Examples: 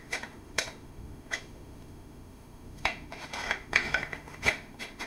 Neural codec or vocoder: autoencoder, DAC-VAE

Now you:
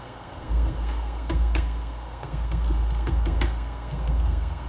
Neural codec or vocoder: codec, SNAC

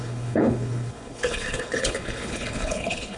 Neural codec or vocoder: codec, HILCodec